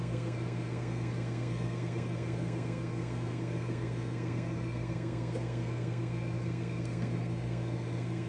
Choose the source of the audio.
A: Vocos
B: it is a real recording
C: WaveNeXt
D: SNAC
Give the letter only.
D